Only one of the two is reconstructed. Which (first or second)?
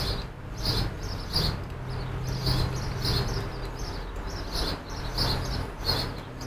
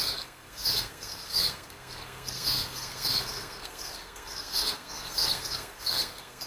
second